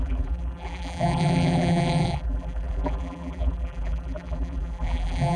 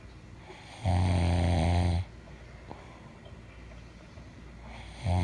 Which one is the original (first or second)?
second